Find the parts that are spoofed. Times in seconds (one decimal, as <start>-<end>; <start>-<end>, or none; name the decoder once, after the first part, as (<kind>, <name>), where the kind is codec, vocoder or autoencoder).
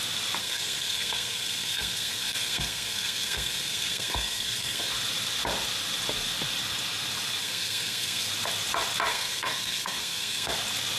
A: 0.4-4.9 (codec, SNAC); 7.4-8.3; 9.1-10.5